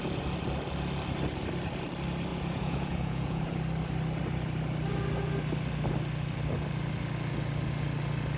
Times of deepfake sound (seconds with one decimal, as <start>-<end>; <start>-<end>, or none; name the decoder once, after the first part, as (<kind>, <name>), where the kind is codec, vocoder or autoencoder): 2.3-3.4 (vocoder, Vocos)